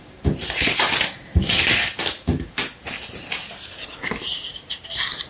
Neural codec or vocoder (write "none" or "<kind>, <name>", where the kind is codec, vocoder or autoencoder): vocoder, BigVGAN v2